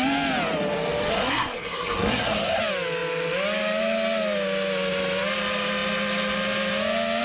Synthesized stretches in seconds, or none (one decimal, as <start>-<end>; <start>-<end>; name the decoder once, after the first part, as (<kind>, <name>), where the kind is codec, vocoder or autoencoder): 1.1-2.6 (codec, SNAC)